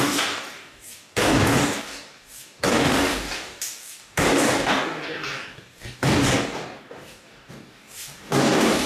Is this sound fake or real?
fake